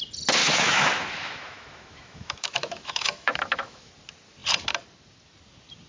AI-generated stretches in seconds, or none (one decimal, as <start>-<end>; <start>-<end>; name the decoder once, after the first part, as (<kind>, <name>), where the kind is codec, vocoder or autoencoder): 0.4-3.9 (autoencoder, DAC-VAE)